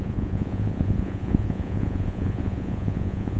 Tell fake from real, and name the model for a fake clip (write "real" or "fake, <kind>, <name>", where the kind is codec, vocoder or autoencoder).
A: fake, vocoder, Vocos